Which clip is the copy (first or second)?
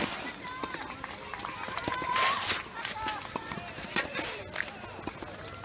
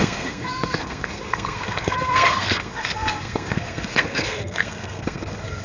second